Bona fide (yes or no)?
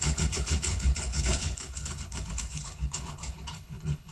no